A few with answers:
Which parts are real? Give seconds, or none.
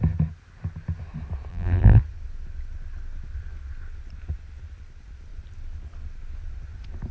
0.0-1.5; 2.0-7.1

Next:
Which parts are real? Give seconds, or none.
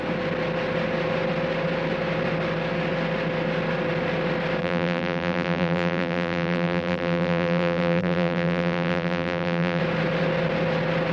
0.0-4.6; 9.8-11.1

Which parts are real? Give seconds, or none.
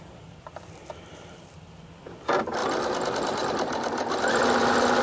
2.6-3.8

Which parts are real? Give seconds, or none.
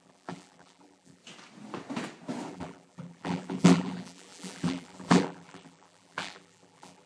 1.2-2.5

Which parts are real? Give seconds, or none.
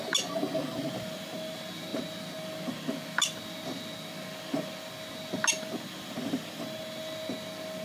0.0-7.8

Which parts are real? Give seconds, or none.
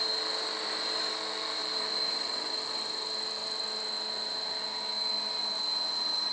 0.0-1.6; 2.8-6.3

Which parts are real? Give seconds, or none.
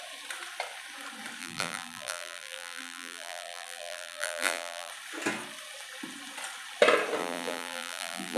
0.0-1.4; 4.9-7.2